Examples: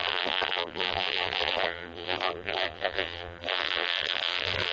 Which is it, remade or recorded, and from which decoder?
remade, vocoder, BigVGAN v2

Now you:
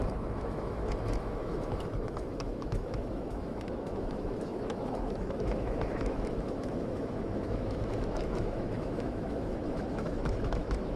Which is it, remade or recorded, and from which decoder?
remade, autoencoder, DAC-VAE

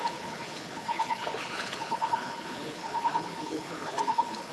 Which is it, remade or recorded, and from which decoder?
remade, codec, HILCodec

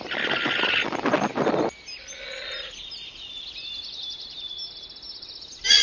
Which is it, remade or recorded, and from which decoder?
recorded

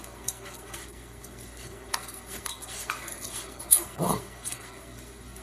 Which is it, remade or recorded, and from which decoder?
remade, codec, SNAC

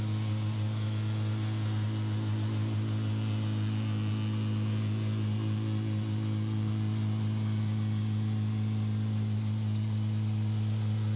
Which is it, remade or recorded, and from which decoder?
recorded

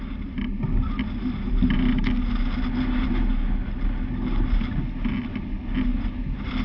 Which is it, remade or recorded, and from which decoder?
recorded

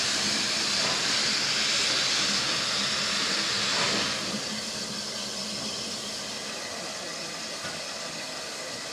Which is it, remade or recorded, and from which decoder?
recorded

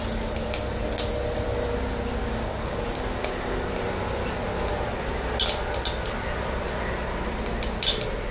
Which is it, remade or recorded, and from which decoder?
recorded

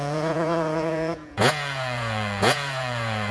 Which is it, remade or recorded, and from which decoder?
remade, vocoder, Vocos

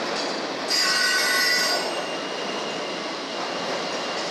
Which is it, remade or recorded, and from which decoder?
recorded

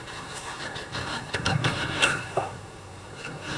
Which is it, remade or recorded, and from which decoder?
remade, codec, SNAC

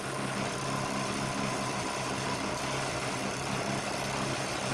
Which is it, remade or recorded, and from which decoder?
recorded